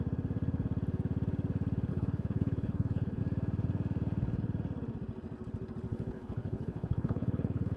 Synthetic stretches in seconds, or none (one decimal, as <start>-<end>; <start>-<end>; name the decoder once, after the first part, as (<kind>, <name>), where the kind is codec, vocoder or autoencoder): 1.9-3.2 (codec, HILCodec); 5.9-7.8